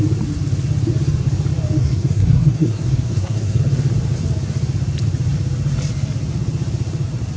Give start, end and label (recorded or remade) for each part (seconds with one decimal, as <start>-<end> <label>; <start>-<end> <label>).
0.0-1.8 recorded; 1.8-3.6 remade; 3.6-7.4 recorded